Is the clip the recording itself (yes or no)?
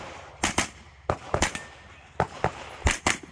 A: yes